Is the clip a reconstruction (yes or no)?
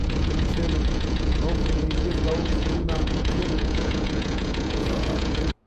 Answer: yes